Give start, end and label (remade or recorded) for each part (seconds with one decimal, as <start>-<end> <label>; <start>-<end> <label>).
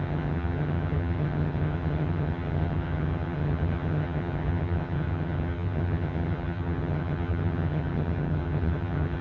0.0-9.2 remade